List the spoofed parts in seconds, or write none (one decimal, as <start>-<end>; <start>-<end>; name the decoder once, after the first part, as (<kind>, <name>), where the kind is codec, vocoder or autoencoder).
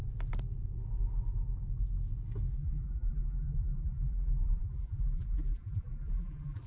2.5-6.7 (vocoder, BigVGAN v2)